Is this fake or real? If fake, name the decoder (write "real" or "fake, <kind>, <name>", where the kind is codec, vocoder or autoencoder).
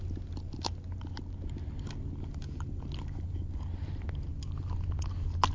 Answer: real